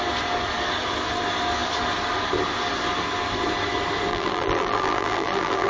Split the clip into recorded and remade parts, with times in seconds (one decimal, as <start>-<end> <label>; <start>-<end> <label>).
0.0-4.1 recorded; 4.1-5.7 remade